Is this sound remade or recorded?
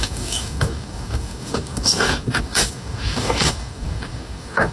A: remade